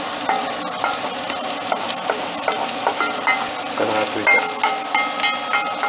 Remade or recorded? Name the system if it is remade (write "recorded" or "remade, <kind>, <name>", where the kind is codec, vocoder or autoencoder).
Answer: recorded